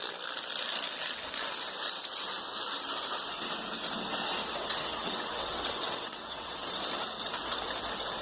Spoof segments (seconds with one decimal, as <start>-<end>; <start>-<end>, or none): 4.4-6.7